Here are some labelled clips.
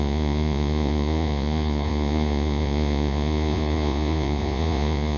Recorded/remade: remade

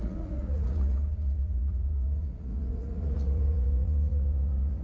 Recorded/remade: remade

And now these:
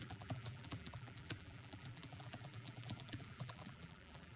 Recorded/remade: remade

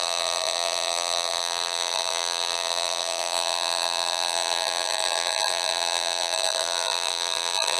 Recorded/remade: remade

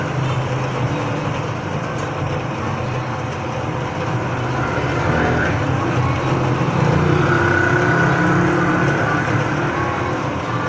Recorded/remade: recorded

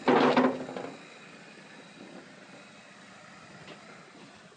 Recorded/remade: recorded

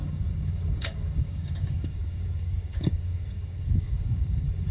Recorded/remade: remade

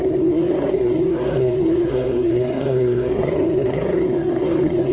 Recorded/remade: remade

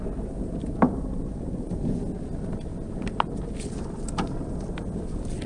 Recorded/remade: recorded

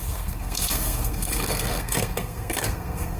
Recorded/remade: remade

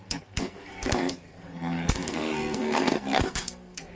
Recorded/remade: remade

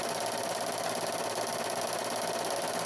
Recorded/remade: recorded